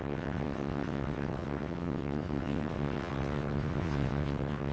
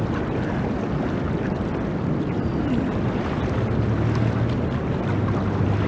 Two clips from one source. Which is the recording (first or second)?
second